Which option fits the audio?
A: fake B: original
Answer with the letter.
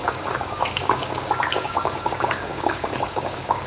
A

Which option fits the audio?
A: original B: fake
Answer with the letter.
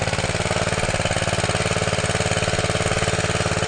A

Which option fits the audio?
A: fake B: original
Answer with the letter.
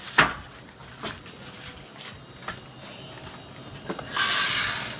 B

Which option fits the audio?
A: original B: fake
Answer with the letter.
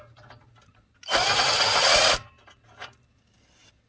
A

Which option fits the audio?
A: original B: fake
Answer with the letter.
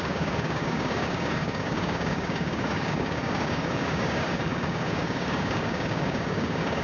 B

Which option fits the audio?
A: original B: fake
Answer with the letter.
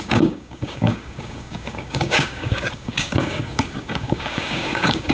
B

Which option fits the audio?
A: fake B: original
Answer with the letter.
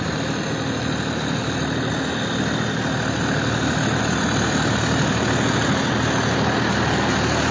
B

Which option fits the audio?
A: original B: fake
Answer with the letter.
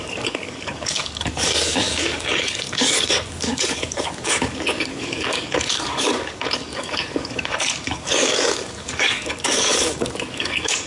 B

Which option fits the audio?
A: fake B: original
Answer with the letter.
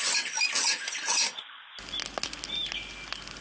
B